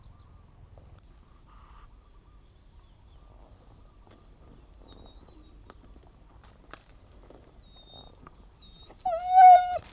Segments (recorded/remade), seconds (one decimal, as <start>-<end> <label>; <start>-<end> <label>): 0.0-9.9 recorded